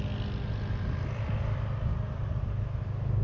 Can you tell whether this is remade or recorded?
recorded